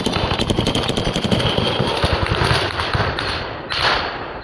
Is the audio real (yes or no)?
no